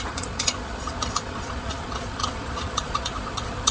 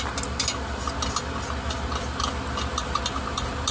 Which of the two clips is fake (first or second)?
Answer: first